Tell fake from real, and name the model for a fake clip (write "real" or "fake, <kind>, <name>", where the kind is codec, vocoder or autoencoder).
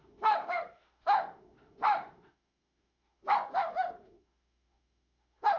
fake, autoencoder, DAC-VAE